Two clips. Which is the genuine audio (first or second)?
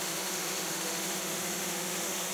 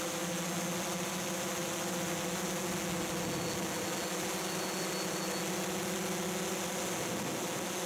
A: second